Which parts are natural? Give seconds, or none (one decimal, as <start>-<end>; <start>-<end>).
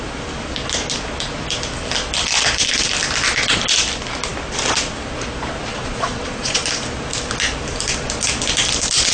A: 0.0-5.7; 6.6-9.1